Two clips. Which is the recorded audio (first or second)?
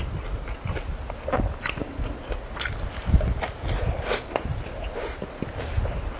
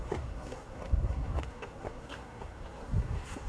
first